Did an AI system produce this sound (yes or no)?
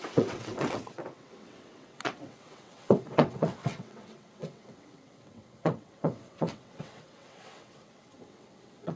yes